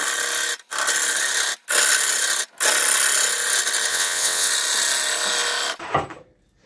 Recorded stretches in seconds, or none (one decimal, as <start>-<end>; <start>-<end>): 0.0-3.9; 4.5-6.7